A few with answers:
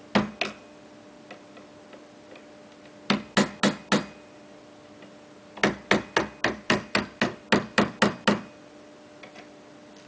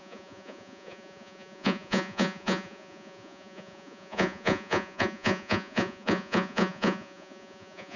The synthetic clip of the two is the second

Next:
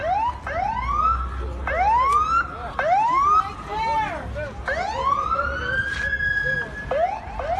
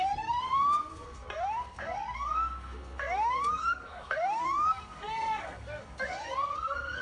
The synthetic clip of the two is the second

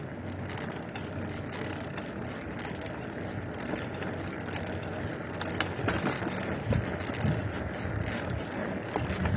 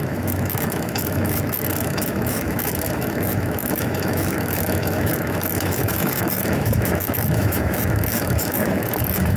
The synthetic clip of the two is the second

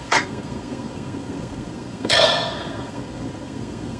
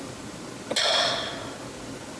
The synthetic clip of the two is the first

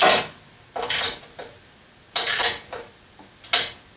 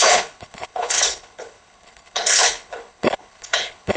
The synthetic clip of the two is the second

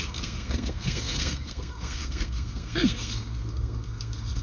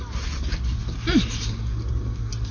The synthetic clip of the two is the first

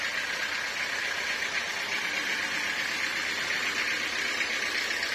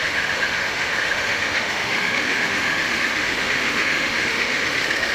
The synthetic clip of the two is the second